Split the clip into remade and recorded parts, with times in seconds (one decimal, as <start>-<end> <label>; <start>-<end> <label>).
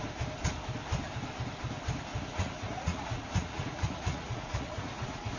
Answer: 0.0-2.1 recorded; 2.1-5.4 remade